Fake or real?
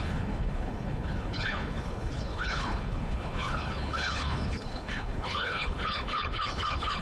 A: fake